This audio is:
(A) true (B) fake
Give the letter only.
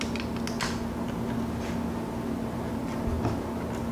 A